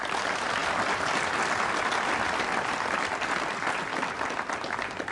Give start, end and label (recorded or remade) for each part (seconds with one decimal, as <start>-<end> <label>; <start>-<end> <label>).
0.0-5.1 recorded